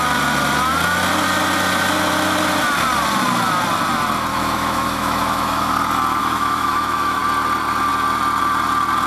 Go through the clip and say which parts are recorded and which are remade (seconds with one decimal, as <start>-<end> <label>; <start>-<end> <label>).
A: 0.0-4.3 recorded; 4.3-5.7 remade; 5.7-6.2 recorded; 6.2-7.2 remade; 7.2-9.1 recorded